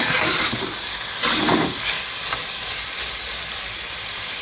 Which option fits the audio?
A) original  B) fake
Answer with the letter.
A